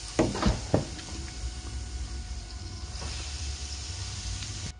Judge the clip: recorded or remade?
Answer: recorded